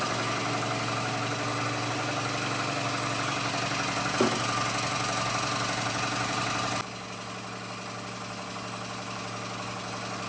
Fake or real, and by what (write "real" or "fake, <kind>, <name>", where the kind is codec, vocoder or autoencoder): real